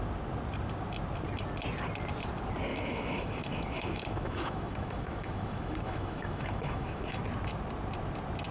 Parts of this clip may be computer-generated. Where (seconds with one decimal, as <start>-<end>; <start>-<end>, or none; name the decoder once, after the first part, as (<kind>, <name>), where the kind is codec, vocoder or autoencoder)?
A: 2.7-7.2 (autoencoder, DAC-VAE)